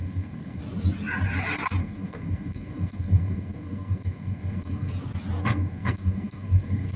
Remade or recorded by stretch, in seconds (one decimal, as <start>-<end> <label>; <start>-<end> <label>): 0.0-0.6 remade; 0.6-1.8 recorded; 1.8-4.9 remade; 4.9-5.4 recorded; 5.4-7.0 remade